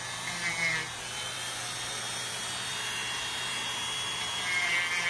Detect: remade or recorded remade